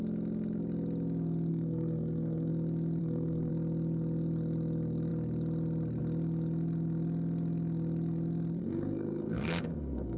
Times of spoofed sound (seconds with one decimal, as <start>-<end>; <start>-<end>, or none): 1.5-2.5; 3.0-3.5; 8.6-10.2

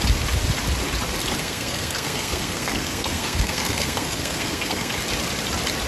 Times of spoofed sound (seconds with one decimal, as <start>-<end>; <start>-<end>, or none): 1.4-4.9

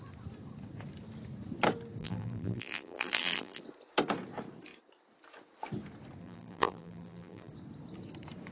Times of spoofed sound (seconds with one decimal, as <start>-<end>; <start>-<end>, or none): 2.0-3.6; 6.2-7.5

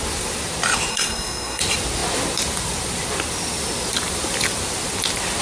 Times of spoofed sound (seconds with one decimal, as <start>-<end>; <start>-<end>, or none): 0.9-1.6

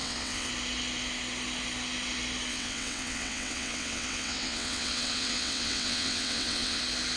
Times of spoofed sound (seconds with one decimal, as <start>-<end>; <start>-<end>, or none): 0.0-0.5; 2.5-6.8

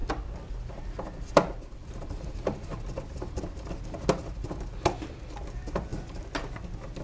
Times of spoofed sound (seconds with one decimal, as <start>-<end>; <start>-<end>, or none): none

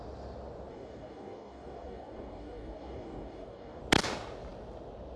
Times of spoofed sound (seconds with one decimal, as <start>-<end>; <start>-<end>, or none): 0.7-3.8

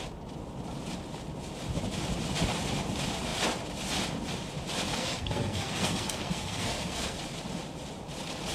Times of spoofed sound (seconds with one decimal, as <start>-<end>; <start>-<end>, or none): 4.9-7.2